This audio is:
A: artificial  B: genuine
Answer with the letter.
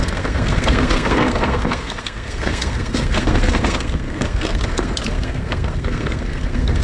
A